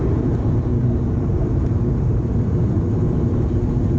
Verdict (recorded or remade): remade